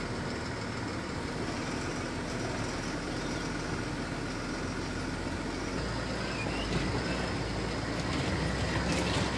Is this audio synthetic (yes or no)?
no